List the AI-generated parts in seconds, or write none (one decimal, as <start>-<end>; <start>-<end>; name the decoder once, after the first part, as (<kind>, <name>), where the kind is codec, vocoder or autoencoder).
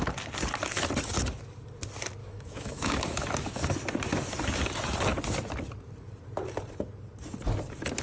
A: 2.2-3.7 (autoencoder, DAC-VAE)